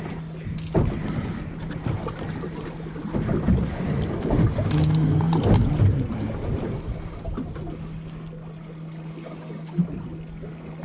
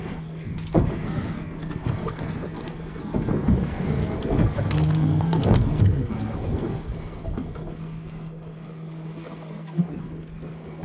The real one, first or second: first